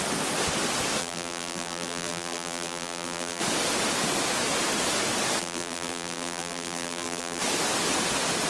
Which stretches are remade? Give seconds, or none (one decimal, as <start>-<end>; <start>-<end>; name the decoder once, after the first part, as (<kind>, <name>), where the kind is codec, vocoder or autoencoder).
1.0-3.4 (vocoder, BigVGAN v2); 5.4-7.4